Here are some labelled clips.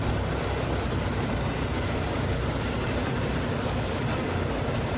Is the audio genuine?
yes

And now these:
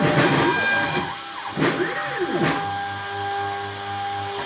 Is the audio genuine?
yes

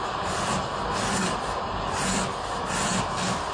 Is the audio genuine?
yes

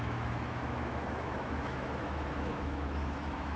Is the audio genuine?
no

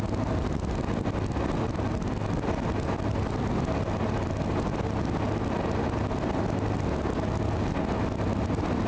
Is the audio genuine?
yes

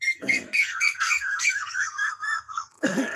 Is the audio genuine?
no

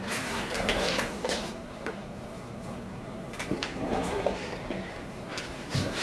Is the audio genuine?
no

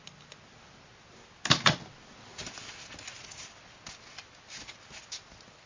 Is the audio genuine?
yes